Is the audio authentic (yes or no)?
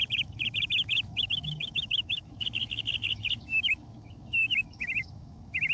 no